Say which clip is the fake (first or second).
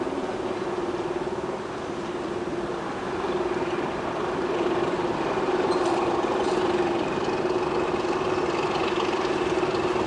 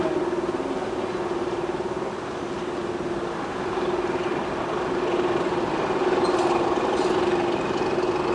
first